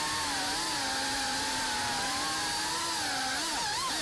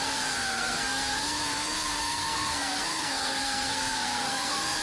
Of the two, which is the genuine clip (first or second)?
first